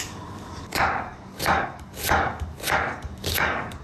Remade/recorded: remade